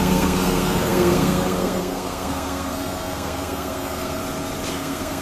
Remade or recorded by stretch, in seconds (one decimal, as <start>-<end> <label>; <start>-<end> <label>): 0.0-4.2 remade; 4.2-4.7 recorded; 4.7-5.2 remade